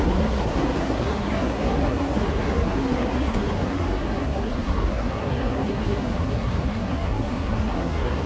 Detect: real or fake fake